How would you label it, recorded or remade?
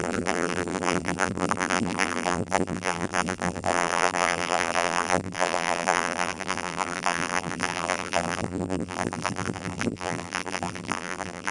remade